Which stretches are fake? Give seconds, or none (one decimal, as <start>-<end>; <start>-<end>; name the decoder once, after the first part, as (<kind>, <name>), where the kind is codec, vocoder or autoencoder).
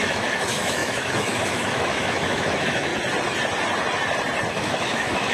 0.0-2.9 (autoencoder, DAC-VAE); 4.5-5.3